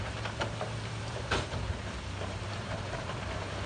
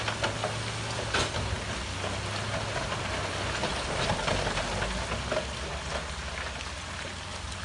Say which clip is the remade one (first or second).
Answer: first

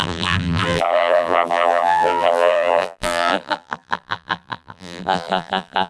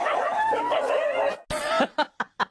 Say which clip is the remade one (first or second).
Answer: first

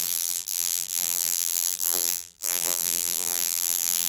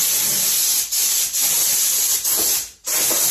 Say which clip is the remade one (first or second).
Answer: first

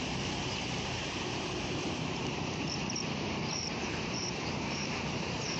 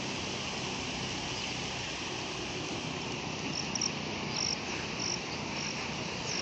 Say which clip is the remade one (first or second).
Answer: first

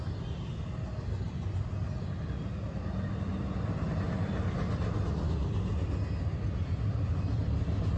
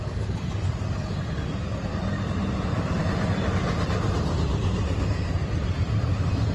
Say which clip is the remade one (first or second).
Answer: second